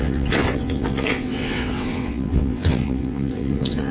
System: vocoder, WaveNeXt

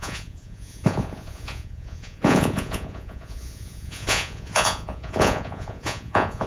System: vocoder, Vocos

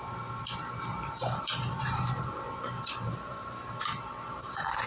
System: vocoder, BigVGAN v2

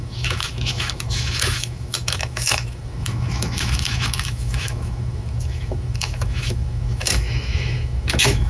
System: autoencoder, DAC-VAE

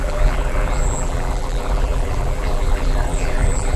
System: vocoder, BigVGAN v2